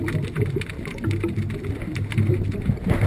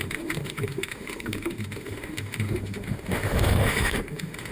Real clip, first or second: first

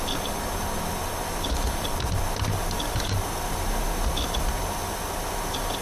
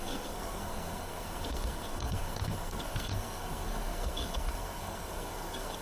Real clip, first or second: first